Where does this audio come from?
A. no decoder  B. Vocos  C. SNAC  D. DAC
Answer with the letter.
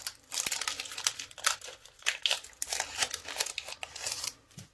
A